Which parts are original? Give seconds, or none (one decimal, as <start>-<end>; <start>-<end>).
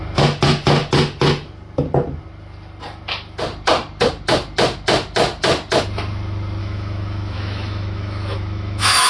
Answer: 0.0-6.6